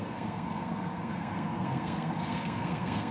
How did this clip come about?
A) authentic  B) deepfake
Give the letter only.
B